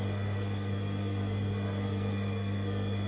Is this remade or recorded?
remade